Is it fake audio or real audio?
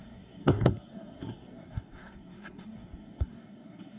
fake